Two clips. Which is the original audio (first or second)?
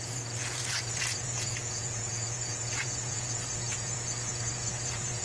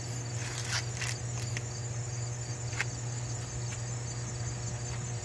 second